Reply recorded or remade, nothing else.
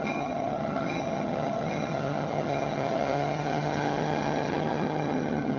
remade